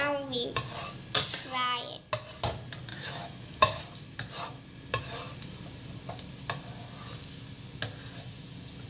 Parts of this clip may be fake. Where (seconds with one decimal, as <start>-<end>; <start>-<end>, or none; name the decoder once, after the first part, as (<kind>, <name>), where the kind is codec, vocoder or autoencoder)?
2.9-3.8 (autoencoder, DAC-VAE)